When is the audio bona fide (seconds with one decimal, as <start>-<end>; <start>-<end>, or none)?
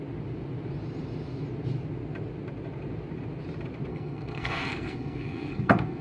0.0-3.9